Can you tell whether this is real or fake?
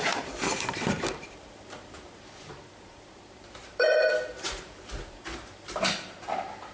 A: fake